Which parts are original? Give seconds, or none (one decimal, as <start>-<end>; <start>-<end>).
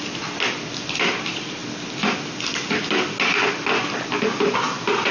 0.0-5.1